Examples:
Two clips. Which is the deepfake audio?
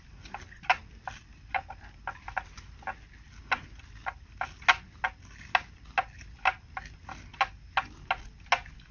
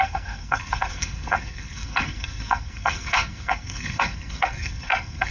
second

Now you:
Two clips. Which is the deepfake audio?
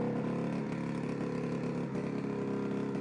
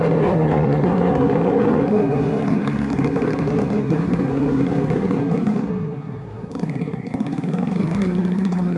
second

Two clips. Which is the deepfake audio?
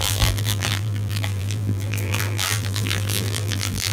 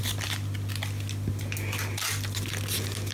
first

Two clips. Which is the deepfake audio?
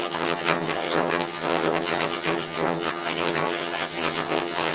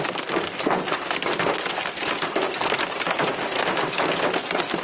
first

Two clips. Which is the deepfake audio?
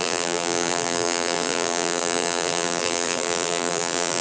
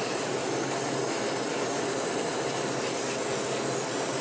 first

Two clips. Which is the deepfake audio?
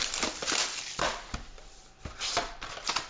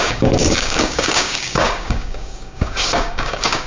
second